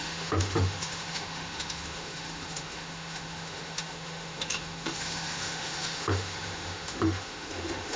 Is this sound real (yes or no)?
no